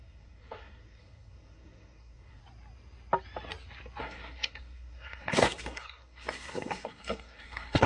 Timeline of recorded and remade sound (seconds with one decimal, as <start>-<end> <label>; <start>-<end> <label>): 0.0-2.4 remade; 2.4-4.0 recorded; 4.0-7.9 remade